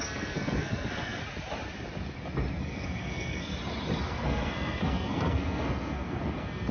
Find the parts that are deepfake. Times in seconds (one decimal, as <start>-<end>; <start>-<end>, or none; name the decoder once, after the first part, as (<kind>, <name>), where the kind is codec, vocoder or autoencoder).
0.0-1.2 (codec, SNAC); 2.6-3.5; 4.0-6.7